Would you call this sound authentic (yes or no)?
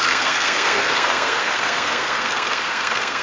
no